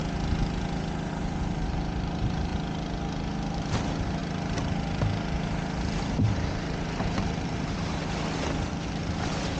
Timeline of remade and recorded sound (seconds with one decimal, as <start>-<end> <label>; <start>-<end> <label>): 0.0-1.1 recorded; 1.1-2.5 remade; 2.5-3.5 recorded; 3.5-4.2 remade; 4.2-6.0 recorded; 6.0-8.0 remade; 8.0-8.7 recorded; 8.7-9.6 remade